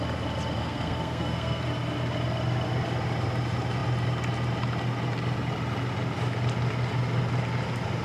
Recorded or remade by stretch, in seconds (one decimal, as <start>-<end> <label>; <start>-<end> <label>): 0.0-0.6 recorded; 0.6-1.6 remade; 1.6-8.0 recorded